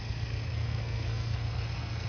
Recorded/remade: remade